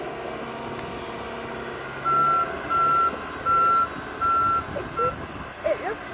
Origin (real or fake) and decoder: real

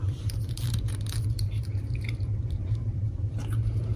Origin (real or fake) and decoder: fake, vocoder, BigVGAN v2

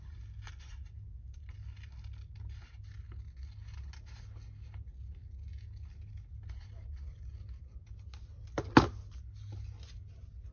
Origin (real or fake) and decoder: real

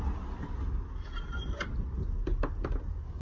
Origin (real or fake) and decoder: real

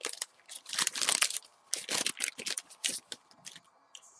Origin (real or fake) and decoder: real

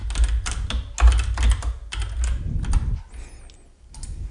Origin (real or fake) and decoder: real